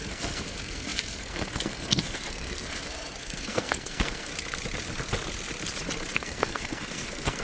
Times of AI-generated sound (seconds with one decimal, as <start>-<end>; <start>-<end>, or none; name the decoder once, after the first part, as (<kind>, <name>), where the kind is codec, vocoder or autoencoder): 0.0-4.3 (codec, SNAC); 6.1-7.4